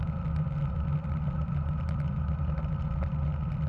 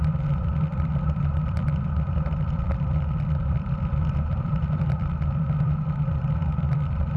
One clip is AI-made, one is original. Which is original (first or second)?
first